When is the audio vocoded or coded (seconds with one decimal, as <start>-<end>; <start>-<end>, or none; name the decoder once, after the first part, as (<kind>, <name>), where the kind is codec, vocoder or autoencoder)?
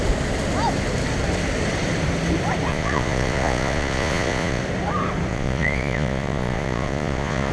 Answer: 2.7-4.6 (vocoder, Vocos); 5.3-7.5